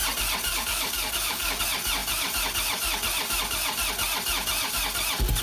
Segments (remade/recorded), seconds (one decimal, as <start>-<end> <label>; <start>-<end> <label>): 0.0-0.5 recorded; 0.5-1.6 remade; 1.6-5.4 recorded